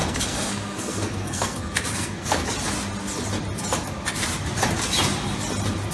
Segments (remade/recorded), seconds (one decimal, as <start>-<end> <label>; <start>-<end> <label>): 0.0-2.5 remade; 2.5-5.9 recorded